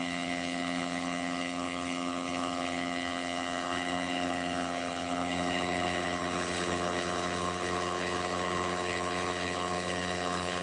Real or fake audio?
fake